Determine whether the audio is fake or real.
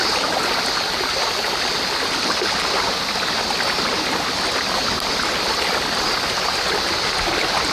real